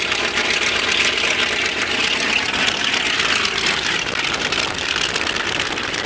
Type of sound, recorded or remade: remade